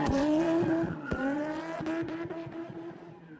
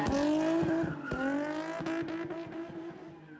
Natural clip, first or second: second